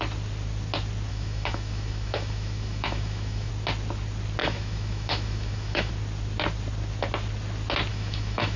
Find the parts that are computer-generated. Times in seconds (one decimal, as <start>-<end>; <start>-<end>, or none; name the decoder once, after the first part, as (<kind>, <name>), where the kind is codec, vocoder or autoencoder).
1.1-3.5 (autoencoder, DAC-VAE); 4.4-5.9; 7.9-8.6